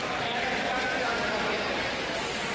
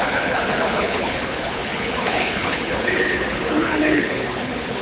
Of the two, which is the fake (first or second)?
second